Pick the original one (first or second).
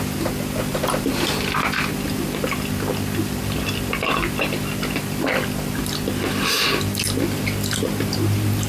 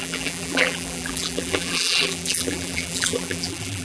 first